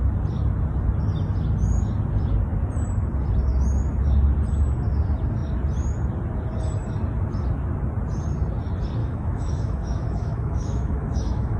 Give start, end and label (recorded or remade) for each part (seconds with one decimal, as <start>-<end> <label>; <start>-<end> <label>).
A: 0.0-9.0 recorded; 9.0-11.6 remade